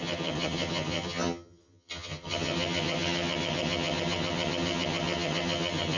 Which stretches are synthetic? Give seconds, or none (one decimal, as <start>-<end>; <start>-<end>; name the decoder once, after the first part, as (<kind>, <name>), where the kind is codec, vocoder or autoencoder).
0.0-6.0 (vocoder, HiFi-GAN)